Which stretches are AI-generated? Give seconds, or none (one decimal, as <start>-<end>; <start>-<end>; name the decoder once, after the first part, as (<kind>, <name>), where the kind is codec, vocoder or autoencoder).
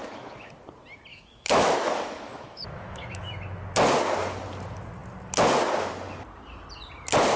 0.0-0.5 (autoencoder, DAC-VAE); 1.1-3.3